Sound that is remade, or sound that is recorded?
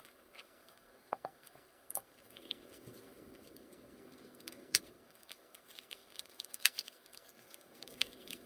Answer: remade